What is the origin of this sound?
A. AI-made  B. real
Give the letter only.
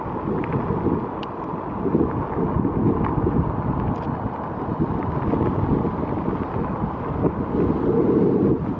B